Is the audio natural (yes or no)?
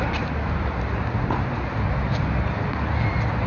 yes